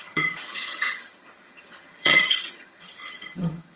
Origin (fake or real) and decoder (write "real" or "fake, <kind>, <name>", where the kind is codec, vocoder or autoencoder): fake, vocoder, HiFi-GAN